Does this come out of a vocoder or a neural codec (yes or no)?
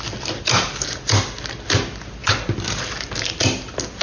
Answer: no